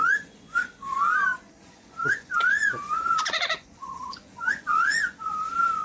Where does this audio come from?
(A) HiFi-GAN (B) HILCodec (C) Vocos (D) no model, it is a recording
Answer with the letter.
C